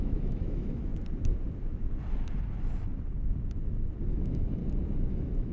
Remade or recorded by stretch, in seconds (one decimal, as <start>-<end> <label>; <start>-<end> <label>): 0.0-0.9 remade; 0.9-4.1 recorded; 4.1-4.6 remade; 4.6-5.1 recorded; 5.1-5.5 remade